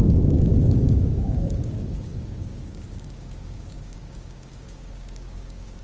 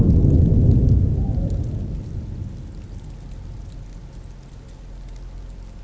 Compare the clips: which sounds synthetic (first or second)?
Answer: first